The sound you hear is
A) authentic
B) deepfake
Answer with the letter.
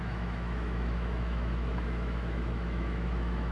B